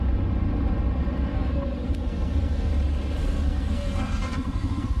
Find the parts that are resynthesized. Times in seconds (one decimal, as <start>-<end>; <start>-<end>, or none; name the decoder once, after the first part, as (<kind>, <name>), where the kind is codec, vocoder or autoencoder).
1.3-2.7 (codec, SNAC); 3.2-5.0